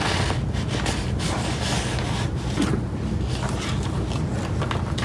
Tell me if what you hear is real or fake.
real